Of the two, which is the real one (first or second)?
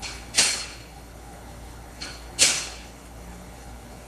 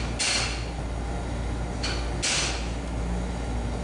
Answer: second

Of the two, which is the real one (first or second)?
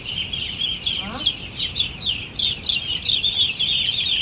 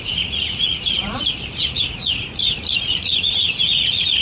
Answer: first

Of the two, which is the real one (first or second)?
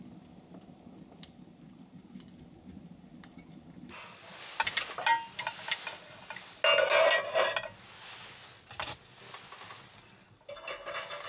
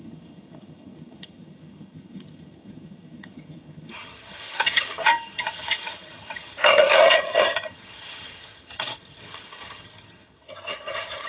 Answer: first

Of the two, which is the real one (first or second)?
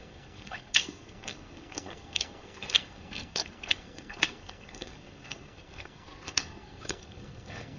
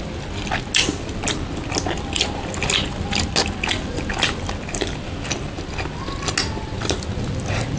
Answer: second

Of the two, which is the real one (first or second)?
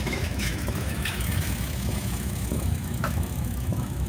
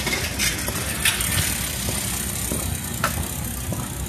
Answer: second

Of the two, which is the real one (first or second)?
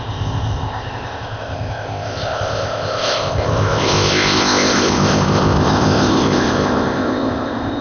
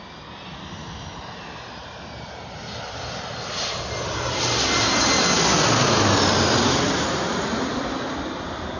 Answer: second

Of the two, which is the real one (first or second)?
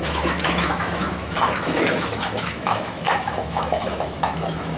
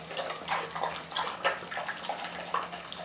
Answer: second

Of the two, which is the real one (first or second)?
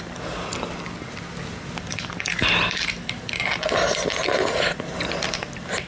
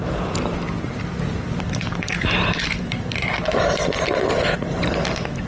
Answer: first